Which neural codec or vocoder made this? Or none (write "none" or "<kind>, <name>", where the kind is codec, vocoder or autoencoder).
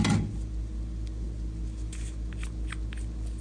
none